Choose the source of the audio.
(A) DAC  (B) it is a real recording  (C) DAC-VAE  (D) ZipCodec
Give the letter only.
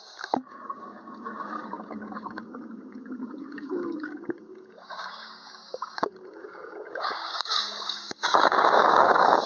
A